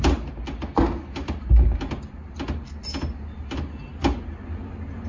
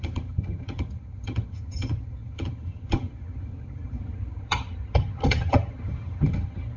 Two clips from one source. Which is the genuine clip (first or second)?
first